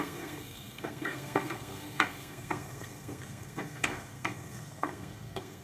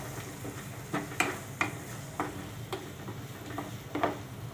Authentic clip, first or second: second